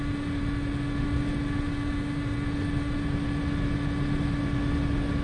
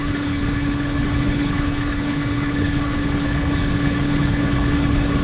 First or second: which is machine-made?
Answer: second